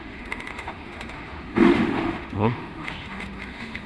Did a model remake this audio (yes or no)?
yes